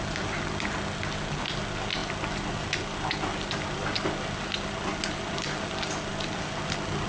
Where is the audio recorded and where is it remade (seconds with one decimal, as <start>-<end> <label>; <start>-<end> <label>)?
0.0-7.1 recorded